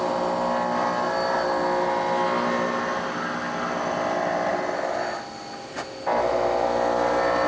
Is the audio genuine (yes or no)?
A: yes